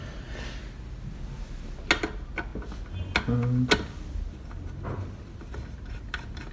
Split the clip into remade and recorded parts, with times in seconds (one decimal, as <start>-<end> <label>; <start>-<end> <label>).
0.0-6.5 recorded